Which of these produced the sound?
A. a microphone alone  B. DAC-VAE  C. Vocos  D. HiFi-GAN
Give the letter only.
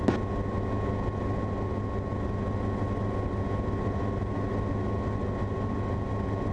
A